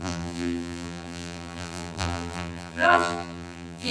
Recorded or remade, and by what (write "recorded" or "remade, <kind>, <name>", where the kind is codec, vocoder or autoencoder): remade, vocoder, BigVGAN v2